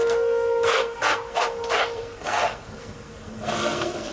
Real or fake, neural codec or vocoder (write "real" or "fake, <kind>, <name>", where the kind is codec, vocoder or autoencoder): fake, codec, SNAC